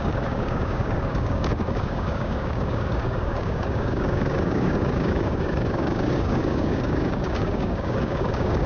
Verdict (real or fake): fake